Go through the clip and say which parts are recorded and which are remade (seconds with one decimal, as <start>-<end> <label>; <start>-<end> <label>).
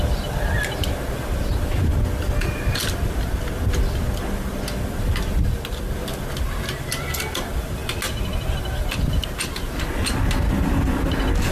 0.0-11.5 recorded